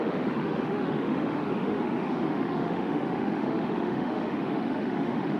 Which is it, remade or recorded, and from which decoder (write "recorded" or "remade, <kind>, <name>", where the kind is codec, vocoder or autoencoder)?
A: remade, autoencoder, DAC-VAE